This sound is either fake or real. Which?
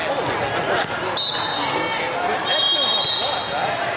real